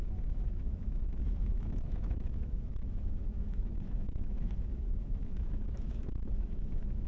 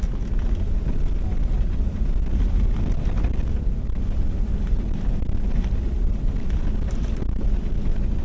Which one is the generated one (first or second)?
first